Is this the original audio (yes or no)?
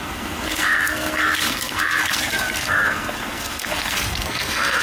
no